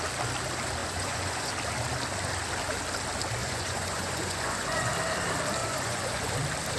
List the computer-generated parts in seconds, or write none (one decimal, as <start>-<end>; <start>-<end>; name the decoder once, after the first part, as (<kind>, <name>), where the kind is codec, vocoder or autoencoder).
0.8-1.5 (vocoder, Vocos); 3.4-4.9; 5.6-6.3